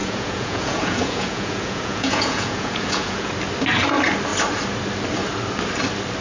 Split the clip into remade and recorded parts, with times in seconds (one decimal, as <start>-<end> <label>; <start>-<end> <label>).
0.0-3.3 remade; 3.3-6.2 recorded